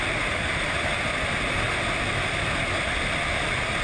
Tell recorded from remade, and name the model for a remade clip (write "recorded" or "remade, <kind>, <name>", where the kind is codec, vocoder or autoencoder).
recorded